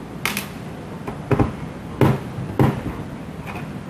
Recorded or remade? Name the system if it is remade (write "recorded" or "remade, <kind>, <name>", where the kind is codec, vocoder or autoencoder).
recorded